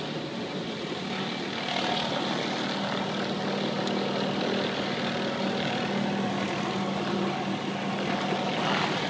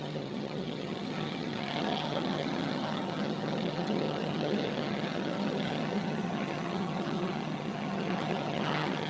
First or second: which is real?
first